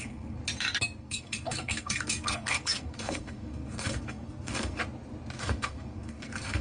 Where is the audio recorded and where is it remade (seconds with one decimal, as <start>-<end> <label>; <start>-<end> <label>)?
0.0-0.4 remade; 0.4-1.0 recorded; 1.0-4.8 remade; 4.8-5.4 recorded; 5.4-6.6 remade